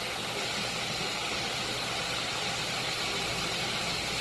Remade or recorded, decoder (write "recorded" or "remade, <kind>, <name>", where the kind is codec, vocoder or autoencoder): recorded